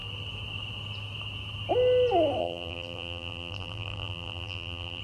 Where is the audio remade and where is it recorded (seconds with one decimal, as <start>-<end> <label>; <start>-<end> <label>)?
0.0-2.4 recorded; 2.4-5.0 remade